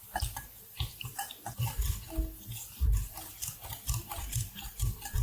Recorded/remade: recorded